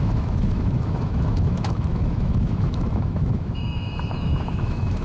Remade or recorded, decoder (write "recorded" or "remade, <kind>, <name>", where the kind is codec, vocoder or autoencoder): remade, autoencoder, DAC-VAE